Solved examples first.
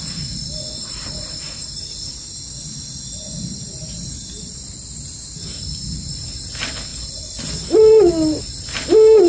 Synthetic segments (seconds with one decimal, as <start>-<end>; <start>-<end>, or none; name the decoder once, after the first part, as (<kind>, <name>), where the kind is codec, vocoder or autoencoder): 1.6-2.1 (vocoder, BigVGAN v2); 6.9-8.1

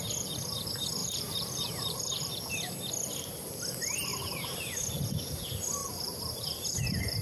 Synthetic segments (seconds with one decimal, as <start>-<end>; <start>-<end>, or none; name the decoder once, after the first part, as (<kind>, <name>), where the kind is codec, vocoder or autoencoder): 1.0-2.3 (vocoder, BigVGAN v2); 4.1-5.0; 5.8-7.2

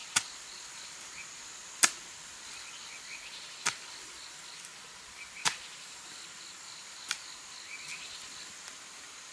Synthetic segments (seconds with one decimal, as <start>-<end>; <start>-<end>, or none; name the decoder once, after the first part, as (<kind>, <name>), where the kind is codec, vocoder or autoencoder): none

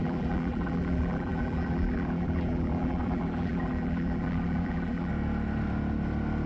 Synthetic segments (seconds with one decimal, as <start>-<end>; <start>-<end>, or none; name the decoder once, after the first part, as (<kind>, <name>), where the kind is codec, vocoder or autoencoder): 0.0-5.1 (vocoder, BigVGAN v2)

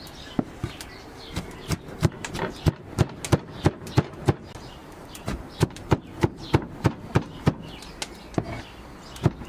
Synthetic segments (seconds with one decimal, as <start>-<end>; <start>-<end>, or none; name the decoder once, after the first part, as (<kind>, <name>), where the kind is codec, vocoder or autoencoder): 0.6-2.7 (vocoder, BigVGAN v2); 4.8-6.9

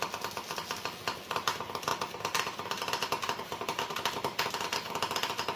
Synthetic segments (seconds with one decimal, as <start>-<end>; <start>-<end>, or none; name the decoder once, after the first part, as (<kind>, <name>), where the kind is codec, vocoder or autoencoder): 1.9-4.5 (vocoder, BigVGAN v2)

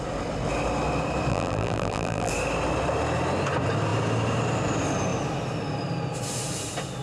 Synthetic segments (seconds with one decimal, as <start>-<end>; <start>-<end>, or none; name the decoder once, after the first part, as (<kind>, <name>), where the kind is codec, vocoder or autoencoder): 1.3-2.3 (vocoder, BigVGAN v2)